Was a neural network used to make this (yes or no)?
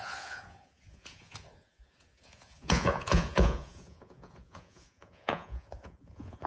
yes